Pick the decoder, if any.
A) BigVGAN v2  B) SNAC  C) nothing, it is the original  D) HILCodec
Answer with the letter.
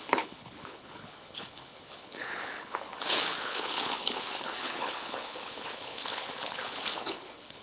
D